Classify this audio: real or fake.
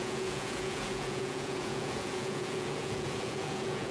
fake